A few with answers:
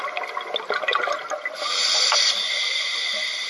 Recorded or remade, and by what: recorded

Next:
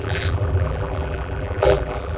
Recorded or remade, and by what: remade, vocoder, BigVGAN v2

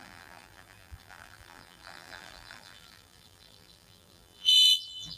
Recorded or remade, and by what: remade, vocoder, BigVGAN v2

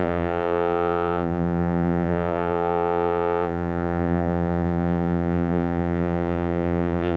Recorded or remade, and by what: remade, vocoder, BigVGAN v2